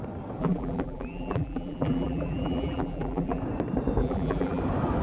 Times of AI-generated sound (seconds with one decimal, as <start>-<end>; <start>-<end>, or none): 0.4-3.4; 4.0-4.6